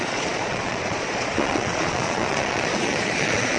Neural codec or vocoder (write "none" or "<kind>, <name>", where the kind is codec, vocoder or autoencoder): vocoder, Vocos